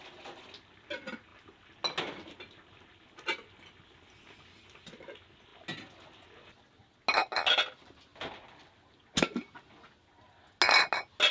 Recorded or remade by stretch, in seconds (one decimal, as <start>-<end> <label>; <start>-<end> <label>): 0.0-11.3 recorded